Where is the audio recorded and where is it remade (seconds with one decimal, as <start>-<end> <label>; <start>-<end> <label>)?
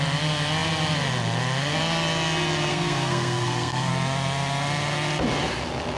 0.0-2.7 recorded; 2.7-3.9 remade; 3.9-6.0 recorded